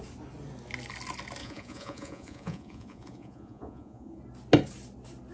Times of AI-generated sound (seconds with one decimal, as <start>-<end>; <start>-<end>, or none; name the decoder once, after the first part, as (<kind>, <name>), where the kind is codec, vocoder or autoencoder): 1.4-4.2 (vocoder, Vocos)